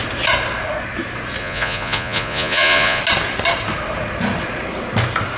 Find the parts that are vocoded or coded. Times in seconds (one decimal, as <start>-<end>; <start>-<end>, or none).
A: 1.4-3.0